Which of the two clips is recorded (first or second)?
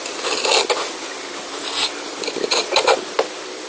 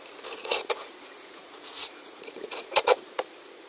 first